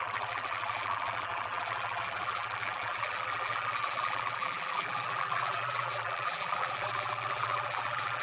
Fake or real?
fake